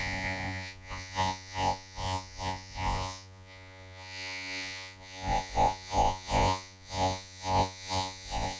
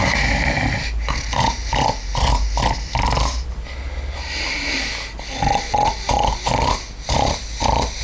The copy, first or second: first